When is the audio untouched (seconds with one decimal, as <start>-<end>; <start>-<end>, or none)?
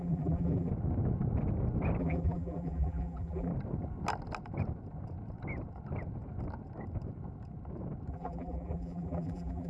0.7-2.0; 3.5-8.1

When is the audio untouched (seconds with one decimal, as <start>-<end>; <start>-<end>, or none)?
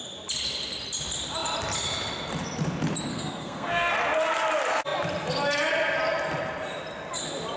0.0-3.1; 3.9-7.6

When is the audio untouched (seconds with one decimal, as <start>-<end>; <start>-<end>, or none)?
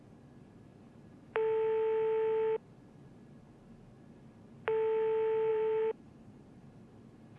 0.0-5.5; 6.6-7.4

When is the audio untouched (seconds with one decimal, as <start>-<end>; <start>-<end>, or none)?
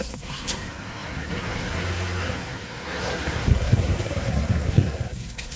none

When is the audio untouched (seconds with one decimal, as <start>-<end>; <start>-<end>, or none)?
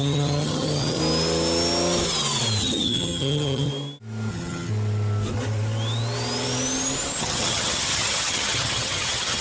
1.0-2.6; 3.7-4.3; 4.7-7.2